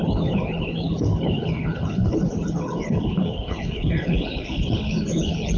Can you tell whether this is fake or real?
fake